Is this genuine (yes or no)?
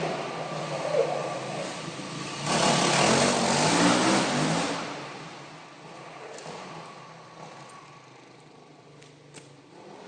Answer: yes